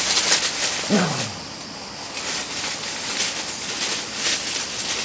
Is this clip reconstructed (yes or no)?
no